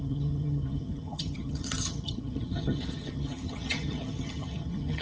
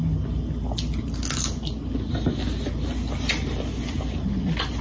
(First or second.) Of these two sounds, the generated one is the first